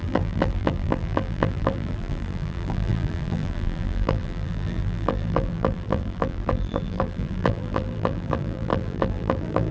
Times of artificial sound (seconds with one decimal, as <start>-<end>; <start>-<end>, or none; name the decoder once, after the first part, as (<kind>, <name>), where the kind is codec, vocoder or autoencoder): 0.0-9.7 (vocoder, BigVGAN v2)